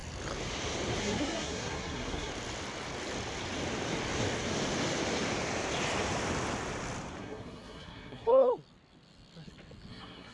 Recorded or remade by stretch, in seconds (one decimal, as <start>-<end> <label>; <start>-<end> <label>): 0.0-1.0 recorded; 1.0-2.3 remade; 2.3-7.2 recorded; 7.2-8.5 remade; 8.5-9.9 recorded; 9.9-10.3 remade